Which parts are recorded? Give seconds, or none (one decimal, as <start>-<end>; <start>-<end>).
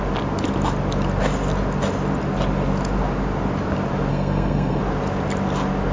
0.0-4.1; 4.8-5.9